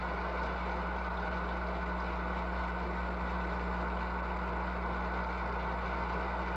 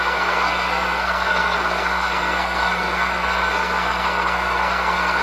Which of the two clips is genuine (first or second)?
first